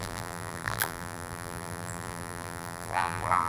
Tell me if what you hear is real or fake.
fake